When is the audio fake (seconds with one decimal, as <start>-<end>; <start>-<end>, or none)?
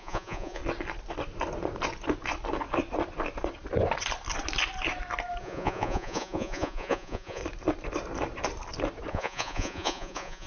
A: 0.0-0.6; 5.4-7.4; 9.1-10.5